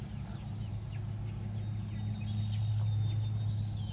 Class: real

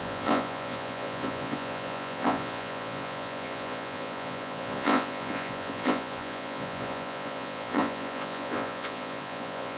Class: fake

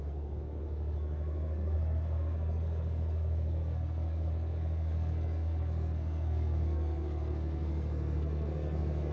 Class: fake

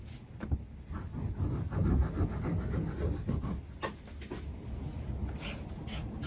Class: real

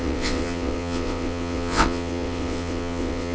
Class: fake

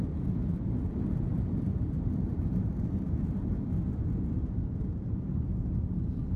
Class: real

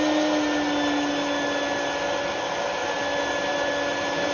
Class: real